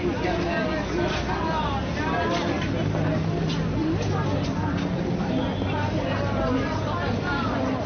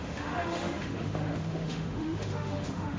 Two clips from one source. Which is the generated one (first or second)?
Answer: second